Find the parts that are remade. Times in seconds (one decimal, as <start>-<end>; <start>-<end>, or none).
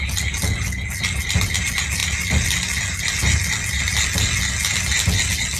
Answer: none